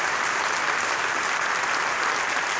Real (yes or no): yes